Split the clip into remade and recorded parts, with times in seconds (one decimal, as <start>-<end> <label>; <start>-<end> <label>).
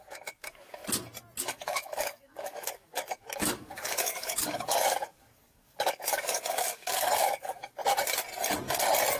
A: 0.0-0.8 remade; 0.8-1.4 recorded; 1.4-7.8 remade; 7.8-9.2 recorded